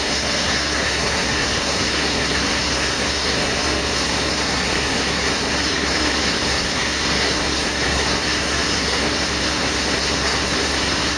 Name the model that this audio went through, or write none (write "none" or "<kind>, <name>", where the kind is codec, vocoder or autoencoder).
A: codec, SNAC